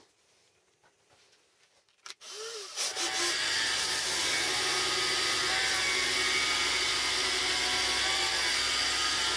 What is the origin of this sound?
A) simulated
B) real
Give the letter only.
B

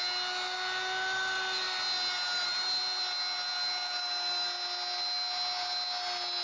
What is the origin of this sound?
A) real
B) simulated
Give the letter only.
A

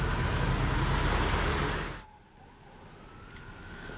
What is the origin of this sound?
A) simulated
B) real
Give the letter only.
B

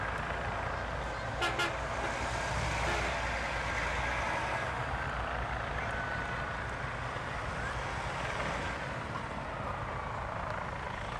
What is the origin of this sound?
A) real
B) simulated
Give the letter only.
A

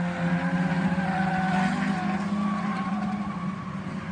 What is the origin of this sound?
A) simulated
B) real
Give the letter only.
B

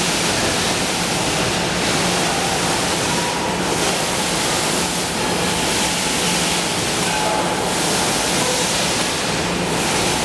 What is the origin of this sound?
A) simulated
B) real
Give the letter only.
B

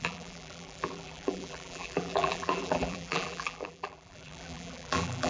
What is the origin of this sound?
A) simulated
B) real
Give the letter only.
A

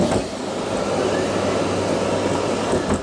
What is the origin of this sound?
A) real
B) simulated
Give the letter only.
A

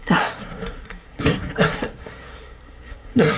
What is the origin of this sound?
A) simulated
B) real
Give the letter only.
A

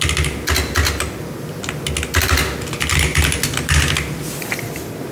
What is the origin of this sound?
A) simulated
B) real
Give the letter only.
B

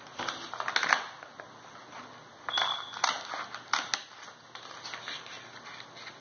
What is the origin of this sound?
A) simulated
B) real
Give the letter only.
B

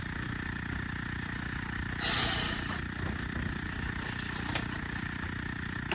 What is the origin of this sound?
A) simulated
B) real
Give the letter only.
B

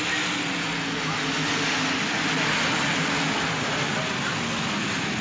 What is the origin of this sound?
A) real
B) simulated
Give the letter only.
A